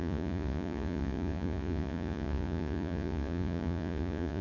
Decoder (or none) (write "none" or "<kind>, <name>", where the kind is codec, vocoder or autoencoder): vocoder, Vocos